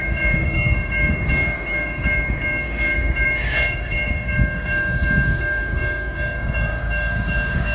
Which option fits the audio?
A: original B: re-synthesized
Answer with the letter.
B